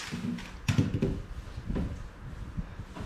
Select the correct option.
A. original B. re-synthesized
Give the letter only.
A